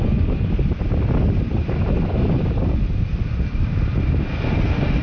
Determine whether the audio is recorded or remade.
recorded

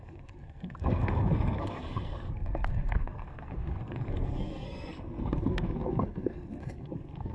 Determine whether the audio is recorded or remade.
remade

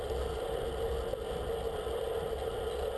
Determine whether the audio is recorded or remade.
recorded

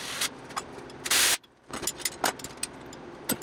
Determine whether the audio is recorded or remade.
recorded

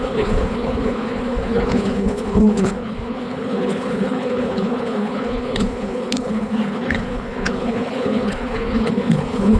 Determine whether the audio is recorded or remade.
remade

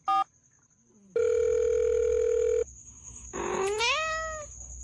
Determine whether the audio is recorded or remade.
recorded